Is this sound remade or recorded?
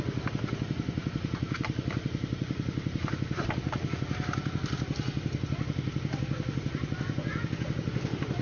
recorded